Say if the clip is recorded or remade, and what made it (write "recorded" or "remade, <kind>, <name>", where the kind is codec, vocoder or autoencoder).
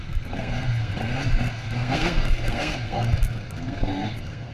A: remade, codec, SNAC